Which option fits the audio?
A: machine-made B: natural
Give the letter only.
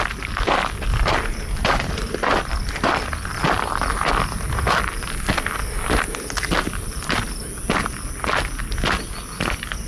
B